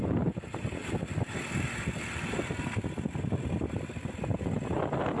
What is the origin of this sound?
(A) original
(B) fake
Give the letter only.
A